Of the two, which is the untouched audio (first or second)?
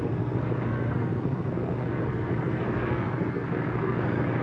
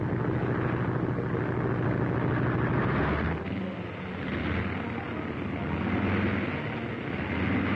second